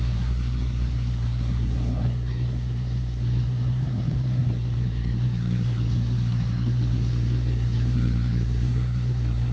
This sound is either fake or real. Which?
fake